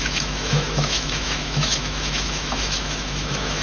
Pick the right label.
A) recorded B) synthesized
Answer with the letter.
B